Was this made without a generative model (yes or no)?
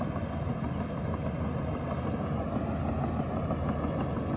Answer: yes